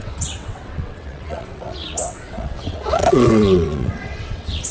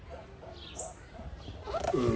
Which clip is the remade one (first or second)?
first